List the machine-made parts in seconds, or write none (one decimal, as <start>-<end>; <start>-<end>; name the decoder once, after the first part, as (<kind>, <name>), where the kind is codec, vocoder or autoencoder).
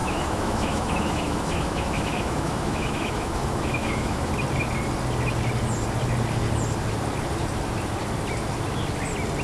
0.0-4.3 (autoencoder, DAC-VAE)